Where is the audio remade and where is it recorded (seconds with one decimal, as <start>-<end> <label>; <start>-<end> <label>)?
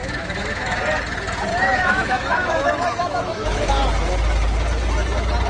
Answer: 0.0-0.8 remade; 0.8-1.5 recorded; 1.5-3.7 remade; 3.7-5.5 recorded